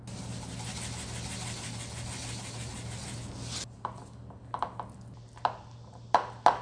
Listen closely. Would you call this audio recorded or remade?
recorded